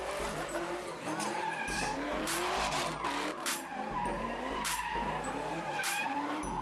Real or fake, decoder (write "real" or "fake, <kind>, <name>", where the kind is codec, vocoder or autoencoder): fake, vocoder, BigVGAN v2